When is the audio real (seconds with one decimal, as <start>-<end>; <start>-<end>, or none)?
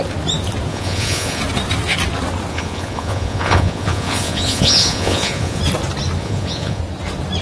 0.0-0.7; 1.4-2.5; 5.6-6.2; 6.8-7.4